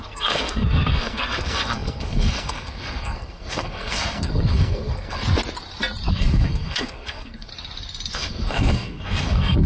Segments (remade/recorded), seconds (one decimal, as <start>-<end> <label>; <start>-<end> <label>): 0.0-5.2 remade; 5.2-6.1 recorded; 6.1-7.5 remade; 7.5-8.1 recorded; 8.1-9.7 remade